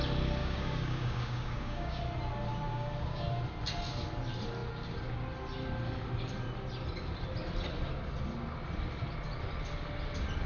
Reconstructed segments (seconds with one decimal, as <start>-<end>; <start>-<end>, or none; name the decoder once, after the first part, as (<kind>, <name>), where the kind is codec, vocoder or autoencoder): 0.4-2.0 (codec, DAC); 2.7-3.3